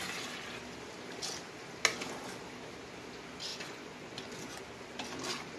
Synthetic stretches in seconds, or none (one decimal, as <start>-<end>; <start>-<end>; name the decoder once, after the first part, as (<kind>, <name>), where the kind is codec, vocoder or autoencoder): 3.5-4.6 (vocoder, Vocos)